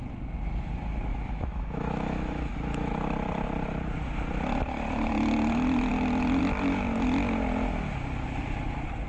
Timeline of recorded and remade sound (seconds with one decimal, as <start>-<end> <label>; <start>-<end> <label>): 0.0-1.1 recorded; 1.1-2.9 remade; 2.9-9.1 recorded